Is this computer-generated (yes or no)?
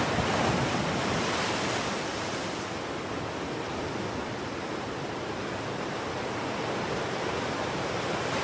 no